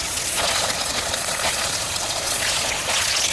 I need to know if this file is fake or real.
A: fake